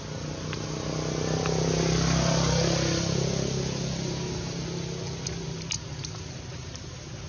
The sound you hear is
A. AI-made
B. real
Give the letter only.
B